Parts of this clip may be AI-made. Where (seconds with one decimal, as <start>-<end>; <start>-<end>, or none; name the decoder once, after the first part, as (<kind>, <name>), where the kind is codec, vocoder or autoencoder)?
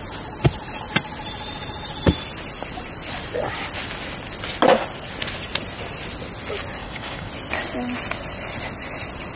6.8-7.3 (codec, DAC)